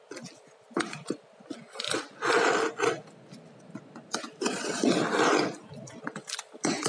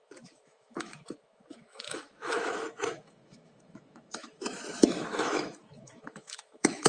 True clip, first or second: first